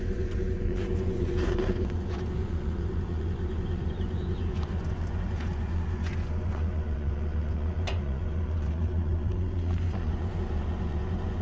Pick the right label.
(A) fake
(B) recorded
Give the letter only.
A